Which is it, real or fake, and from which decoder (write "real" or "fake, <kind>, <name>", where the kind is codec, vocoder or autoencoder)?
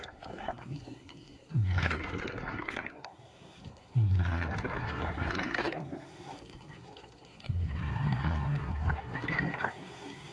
fake, codec, SNAC